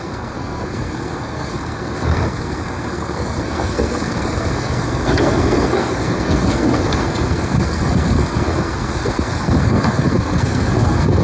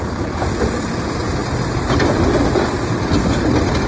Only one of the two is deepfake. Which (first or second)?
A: first